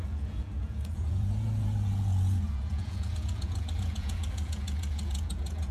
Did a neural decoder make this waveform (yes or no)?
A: yes